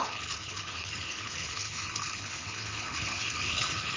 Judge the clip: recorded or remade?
remade